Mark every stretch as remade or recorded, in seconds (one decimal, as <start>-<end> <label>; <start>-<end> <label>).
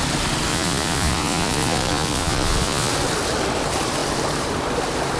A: 0.0-0.5 recorded; 0.5-2.9 remade; 2.9-5.2 recorded